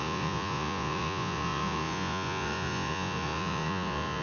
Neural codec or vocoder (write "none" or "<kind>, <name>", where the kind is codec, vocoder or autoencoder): vocoder, Vocos